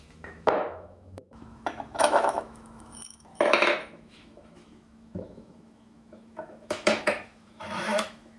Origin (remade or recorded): remade